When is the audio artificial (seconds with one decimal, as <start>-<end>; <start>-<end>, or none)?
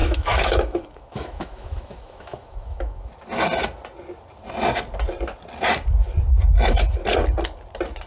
0.0-3.1